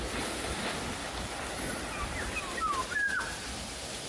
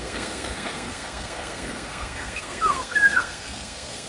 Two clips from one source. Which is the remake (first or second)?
second